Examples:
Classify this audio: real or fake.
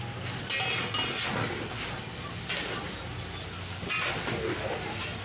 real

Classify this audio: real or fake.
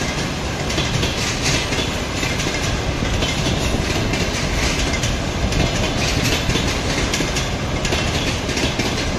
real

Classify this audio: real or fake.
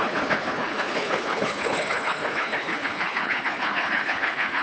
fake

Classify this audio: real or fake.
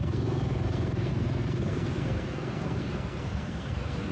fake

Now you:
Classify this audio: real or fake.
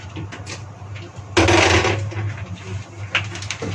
real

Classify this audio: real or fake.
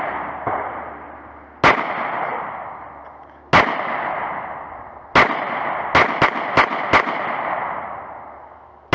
real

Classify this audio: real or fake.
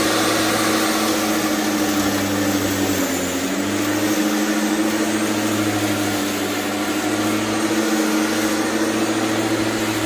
real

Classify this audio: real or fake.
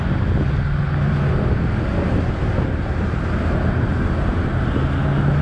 real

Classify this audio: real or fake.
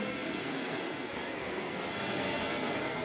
fake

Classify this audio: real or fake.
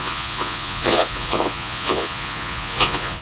fake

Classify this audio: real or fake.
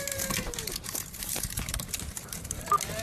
fake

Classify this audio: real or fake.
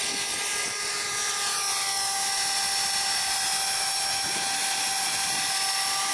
real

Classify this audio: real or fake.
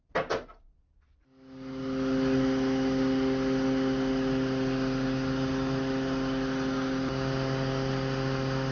real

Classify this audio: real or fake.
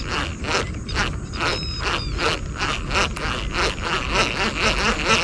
real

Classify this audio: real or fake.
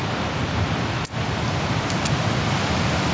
real